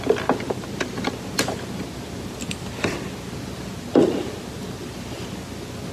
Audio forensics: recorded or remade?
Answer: recorded